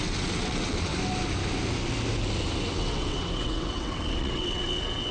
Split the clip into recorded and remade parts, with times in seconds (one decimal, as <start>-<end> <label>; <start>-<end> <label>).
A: 0.0-0.9 remade; 0.9-2.7 recorded; 2.7-5.1 remade